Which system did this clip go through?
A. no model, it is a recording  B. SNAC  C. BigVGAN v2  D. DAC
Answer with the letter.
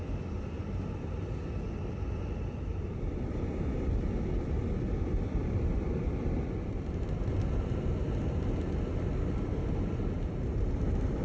A